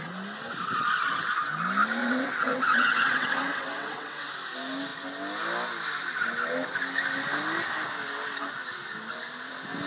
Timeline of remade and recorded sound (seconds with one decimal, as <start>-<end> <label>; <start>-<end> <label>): 0.0-2.0 recorded; 2.0-4.3 remade; 4.3-9.9 recorded